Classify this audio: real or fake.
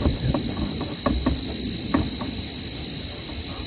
fake